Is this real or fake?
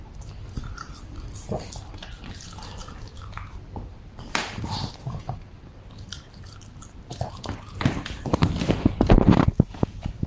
fake